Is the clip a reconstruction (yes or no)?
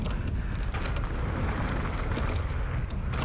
no